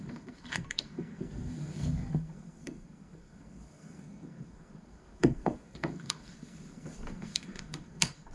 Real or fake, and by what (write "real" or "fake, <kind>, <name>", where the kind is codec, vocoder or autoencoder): fake, codec, SNAC